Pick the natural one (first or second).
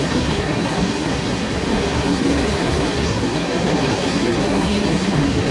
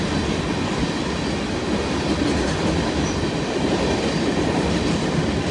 second